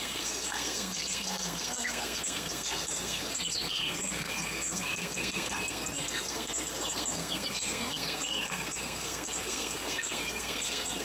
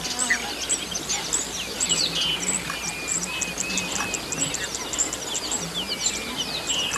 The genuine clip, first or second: second